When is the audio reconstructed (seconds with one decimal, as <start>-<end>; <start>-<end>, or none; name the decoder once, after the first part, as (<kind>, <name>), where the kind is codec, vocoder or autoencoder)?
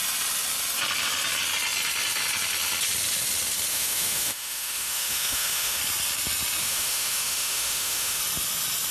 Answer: 3.7-5.8 (autoencoder, DAC-VAE); 6.6-8.2